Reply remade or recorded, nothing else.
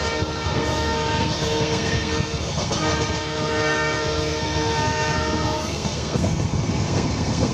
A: remade